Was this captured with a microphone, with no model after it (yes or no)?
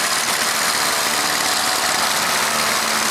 yes